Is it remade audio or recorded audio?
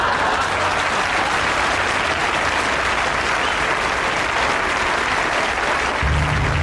recorded